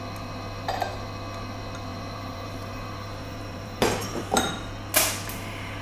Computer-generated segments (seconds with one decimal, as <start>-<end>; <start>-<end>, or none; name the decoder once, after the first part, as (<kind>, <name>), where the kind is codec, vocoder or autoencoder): 1.9-4.5 (vocoder, BigVGAN v2)